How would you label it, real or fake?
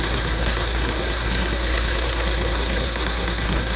fake